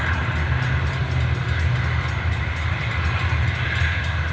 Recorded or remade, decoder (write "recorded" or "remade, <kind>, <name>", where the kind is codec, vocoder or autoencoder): recorded